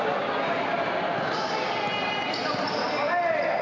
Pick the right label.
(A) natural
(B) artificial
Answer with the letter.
A